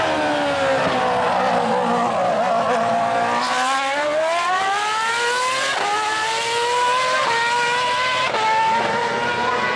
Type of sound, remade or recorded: recorded